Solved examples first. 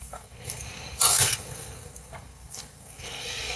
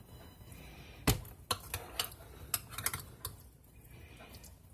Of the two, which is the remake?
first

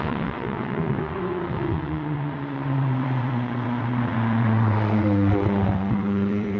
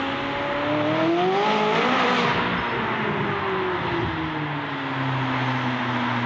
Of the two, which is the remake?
first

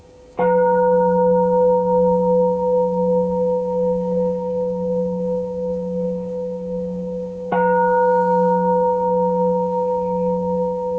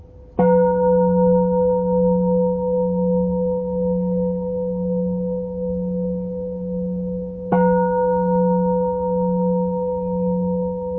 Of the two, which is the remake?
first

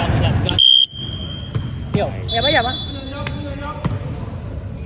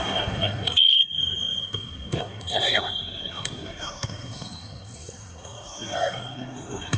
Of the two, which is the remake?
second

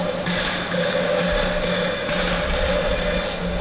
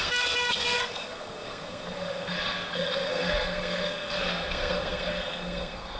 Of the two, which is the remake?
second